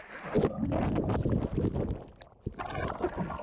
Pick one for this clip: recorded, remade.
recorded